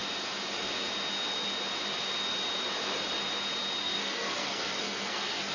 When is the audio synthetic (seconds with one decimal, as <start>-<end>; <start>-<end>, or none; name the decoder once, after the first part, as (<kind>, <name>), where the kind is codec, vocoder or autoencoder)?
3.8-5.5 (codec, SNAC)